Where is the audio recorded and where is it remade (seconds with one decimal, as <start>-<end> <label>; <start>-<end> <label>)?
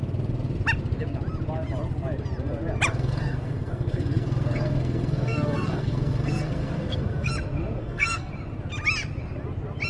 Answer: 0.0-2.9 recorded; 2.9-7.3 remade; 7.3-7.8 recorded; 7.8-8.3 remade; 8.3-9.9 recorded